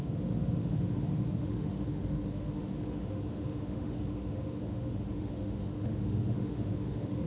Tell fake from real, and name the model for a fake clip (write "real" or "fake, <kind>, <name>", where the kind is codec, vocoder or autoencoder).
fake, autoencoder, DAC-VAE